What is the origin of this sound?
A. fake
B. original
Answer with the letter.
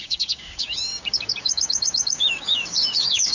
A